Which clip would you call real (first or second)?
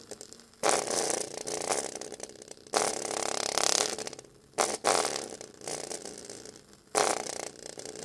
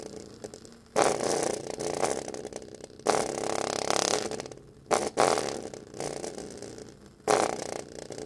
second